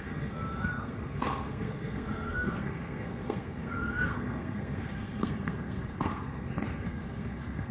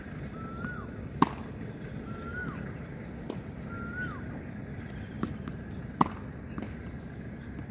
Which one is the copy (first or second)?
first